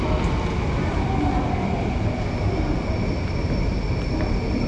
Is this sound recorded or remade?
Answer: recorded